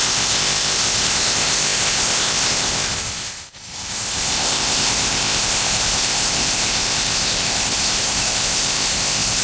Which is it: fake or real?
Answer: fake